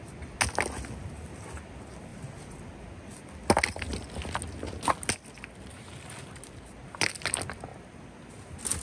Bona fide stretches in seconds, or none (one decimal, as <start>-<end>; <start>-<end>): 0.0-8.8